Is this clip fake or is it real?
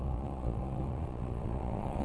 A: fake